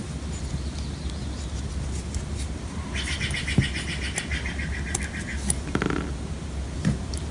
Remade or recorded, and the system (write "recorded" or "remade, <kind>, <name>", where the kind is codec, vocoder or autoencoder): recorded